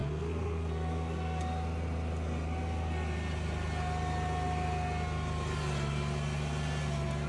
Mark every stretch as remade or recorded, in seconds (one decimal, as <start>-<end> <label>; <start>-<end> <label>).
0.0-1.4 remade; 1.4-7.3 recorded